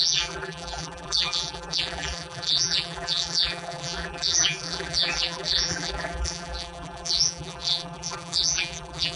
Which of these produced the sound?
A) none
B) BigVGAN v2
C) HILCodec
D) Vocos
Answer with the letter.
B